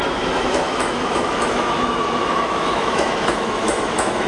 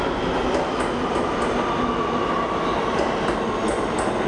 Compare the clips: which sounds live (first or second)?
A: second